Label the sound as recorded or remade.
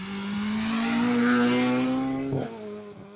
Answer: recorded